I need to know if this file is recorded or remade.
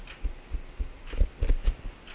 recorded